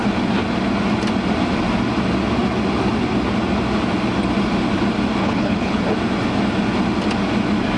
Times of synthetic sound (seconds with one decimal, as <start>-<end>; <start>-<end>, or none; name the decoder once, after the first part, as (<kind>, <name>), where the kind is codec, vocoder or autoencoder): 5.2-5.8 (codec, HILCodec)